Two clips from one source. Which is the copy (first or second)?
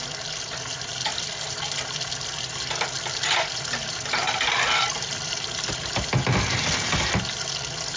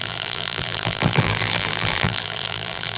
second